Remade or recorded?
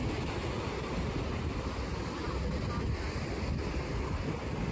recorded